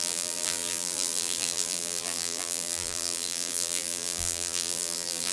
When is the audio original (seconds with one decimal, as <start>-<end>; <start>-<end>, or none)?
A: none